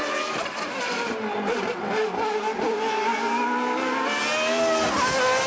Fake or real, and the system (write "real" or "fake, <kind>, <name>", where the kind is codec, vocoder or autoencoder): real